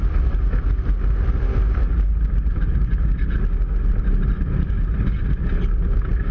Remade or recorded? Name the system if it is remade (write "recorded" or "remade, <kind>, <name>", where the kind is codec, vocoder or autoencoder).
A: recorded